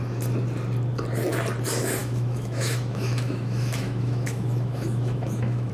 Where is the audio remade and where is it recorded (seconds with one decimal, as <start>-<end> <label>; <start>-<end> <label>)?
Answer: 0.0-2.0 recorded; 2.0-5.7 remade